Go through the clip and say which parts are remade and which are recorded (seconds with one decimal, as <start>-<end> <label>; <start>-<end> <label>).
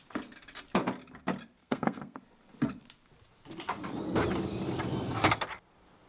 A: 0.0-1.6 recorded; 1.6-2.2 remade; 2.2-6.1 recorded